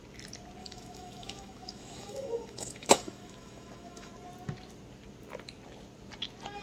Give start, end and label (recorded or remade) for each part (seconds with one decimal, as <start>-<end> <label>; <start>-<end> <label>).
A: 0.0-0.6 recorded; 0.6-4.1 remade; 4.1-6.6 recorded

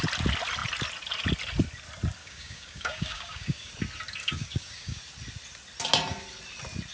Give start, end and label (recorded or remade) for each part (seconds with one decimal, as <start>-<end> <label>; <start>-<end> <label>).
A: 0.0-2.2 recorded; 2.2-3.7 remade; 3.7-4.2 recorded; 4.2-5.0 remade; 5.0-6.9 recorded